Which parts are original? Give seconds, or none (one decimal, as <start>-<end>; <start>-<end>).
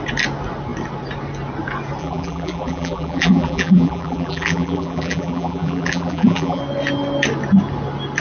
0.0-2.0; 6.6-8.2